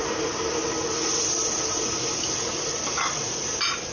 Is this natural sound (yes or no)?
yes